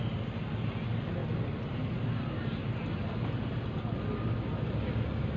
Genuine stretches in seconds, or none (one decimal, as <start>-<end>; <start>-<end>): 0.0-5.4